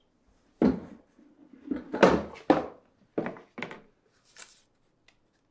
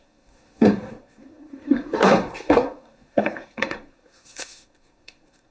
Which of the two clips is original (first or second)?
first